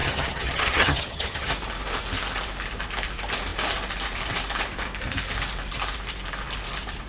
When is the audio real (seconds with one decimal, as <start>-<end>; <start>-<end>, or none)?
1.5-7.1